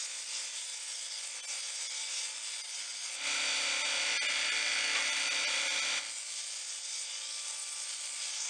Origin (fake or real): real